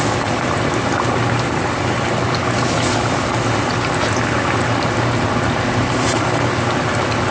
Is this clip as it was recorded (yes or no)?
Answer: yes